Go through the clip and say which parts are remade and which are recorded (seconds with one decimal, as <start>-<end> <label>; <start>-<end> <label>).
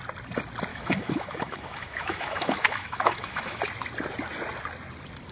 0.0-0.7 recorded; 0.7-3.6 remade; 3.6-5.3 recorded